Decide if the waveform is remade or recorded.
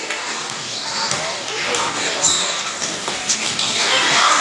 remade